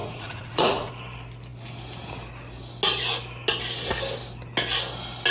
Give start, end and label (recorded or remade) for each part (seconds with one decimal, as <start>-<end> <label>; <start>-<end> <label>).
0.0-0.9 remade; 0.9-5.3 recorded